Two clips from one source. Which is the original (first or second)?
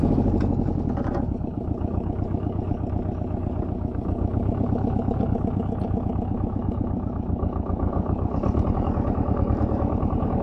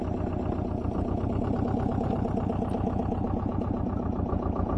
second